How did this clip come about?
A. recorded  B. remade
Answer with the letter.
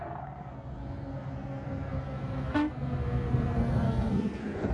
B